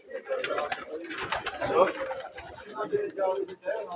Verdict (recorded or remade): recorded